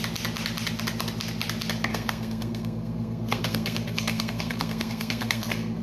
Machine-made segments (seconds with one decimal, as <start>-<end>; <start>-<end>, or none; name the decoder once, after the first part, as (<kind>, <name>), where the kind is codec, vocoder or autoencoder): 1.9-5.8 (codec, SNAC)